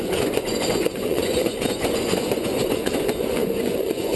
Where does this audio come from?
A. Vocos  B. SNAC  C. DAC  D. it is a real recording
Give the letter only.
A